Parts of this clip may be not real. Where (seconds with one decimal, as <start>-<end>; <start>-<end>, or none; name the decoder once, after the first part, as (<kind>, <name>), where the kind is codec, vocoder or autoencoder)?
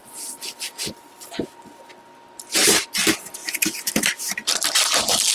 3.4-4.6 (vocoder, BigVGAN v2)